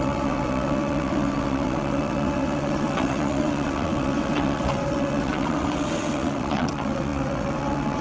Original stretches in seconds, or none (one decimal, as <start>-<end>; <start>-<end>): none